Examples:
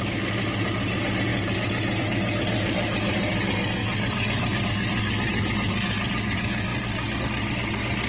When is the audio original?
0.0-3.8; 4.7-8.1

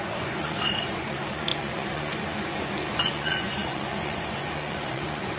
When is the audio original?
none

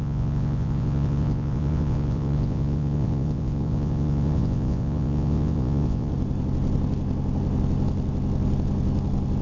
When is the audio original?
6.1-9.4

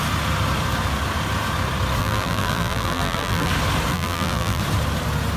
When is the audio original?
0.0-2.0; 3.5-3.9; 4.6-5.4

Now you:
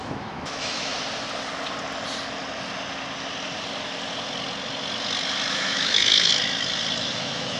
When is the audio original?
0.9-5.5; 6.3-7.1

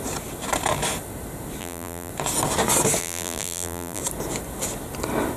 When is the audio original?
0.0-1.6; 2.1-3.0; 4.0-5.4

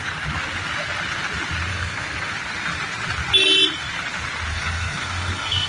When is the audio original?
0.0-1.7; 2.3-4.5